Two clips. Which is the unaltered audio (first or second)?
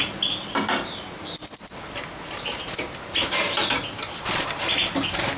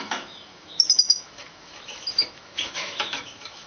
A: first